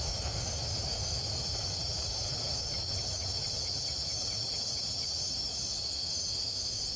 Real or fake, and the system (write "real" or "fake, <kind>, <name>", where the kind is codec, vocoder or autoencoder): fake, autoencoder, DAC-VAE